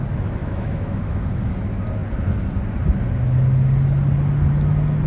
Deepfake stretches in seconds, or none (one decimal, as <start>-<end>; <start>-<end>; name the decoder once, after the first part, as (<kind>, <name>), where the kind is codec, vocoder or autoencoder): 0.4-1.3 (autoencoder, DAC-VAE)

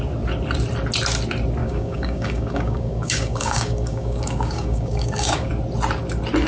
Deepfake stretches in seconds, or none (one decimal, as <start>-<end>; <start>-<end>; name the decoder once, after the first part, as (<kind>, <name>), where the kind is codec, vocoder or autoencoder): 1.6-5.5 (codec, DAC)

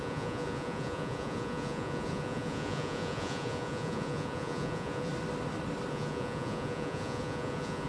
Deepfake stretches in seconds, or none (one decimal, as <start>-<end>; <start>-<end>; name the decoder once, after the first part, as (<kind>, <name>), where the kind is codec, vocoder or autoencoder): 0.0-5.1 (vocoder, Vocos); 5.9-7.9

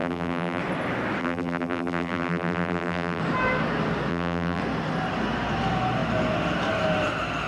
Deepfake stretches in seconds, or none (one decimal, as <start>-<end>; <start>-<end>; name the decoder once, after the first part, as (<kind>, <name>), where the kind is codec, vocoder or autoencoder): 0.0-0.6 (vocoder, BigVGAN v2); 1.2-3.2; 4.1-4.6

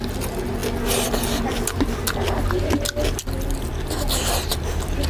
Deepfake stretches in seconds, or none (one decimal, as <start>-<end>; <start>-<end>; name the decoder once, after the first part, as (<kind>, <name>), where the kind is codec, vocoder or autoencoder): none

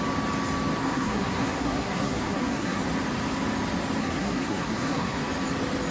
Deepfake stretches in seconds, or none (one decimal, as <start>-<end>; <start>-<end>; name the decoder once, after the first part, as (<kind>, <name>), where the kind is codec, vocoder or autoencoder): 0.8-2.8 (codec, SNAC); 4.0-5.2

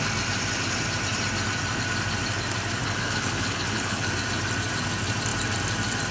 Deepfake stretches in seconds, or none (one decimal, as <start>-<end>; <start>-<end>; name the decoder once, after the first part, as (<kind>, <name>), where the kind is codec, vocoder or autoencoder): 2.8-4.1 (codec, HILCodec)